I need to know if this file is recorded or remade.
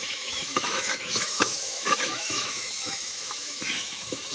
remade